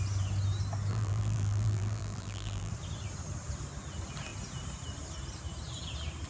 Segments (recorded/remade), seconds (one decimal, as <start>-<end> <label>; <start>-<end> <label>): 0.0-0.9 recorded; 0.9-2.7 remade; 2.7-6.3 recorded